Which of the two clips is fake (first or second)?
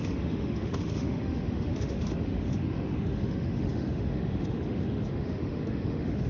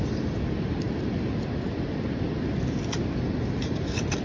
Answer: first